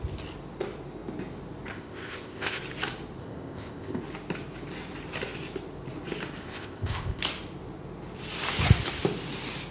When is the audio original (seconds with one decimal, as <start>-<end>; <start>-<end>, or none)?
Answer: 0.0-1.7; 2.6-3.2; 4.0-6.4; 7.2-9.7